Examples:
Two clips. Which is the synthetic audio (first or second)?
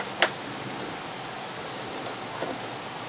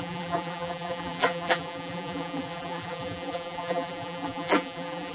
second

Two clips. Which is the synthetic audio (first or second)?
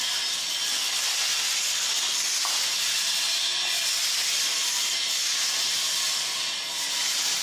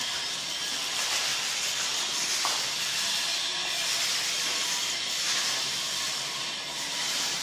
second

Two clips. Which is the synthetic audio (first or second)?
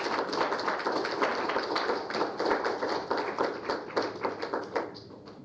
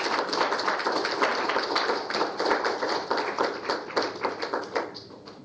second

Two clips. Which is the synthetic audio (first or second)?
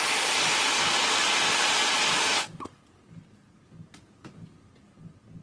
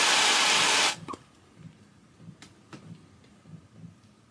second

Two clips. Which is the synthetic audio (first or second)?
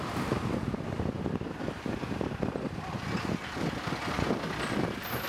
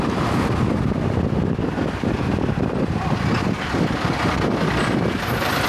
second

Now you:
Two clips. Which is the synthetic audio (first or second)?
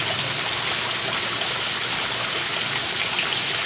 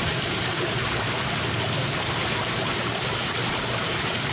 second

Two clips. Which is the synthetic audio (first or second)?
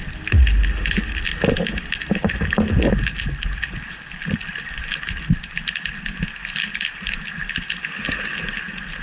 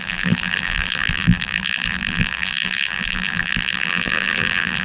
second